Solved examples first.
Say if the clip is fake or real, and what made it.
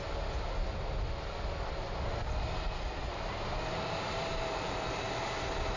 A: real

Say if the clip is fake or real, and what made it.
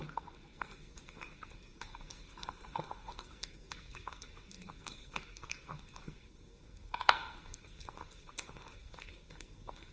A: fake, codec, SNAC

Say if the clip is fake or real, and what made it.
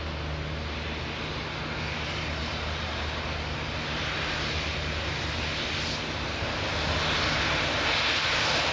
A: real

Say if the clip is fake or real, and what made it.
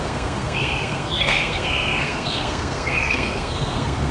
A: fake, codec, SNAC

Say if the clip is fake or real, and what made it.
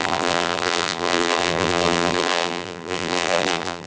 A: fake, vocoder, BigVGAN v2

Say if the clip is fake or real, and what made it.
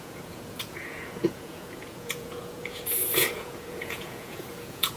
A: fake, vocoder, Vocos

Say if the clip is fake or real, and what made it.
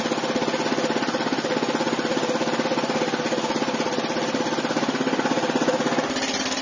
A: real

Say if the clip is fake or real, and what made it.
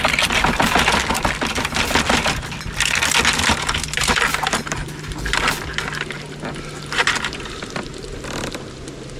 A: real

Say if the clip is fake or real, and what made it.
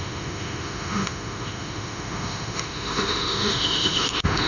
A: fake, autoencoder, DAC-VAE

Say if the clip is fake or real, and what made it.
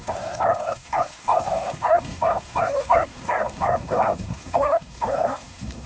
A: fake, codec, SNAC